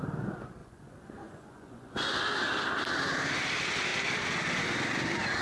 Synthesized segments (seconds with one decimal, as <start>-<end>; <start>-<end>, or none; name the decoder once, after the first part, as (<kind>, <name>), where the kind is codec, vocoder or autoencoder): 0.6-2.2 (vocoder, Vocos)